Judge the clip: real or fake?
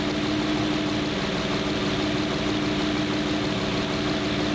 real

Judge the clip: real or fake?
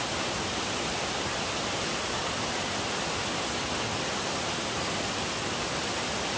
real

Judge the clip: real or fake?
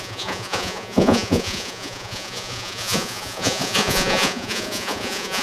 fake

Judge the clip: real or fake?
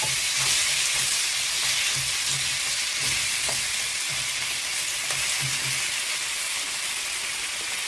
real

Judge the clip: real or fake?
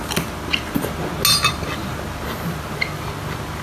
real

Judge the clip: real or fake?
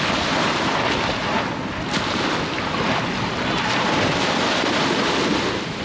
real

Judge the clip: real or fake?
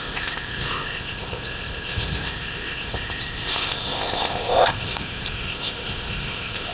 fake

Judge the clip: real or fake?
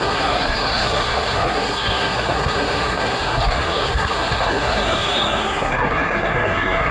fake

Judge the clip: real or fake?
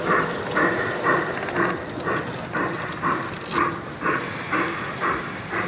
real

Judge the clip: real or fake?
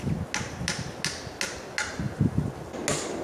real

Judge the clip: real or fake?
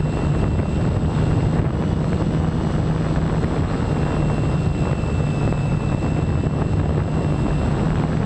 real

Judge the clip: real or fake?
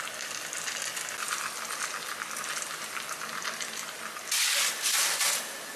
real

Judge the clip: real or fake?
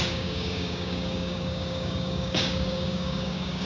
fake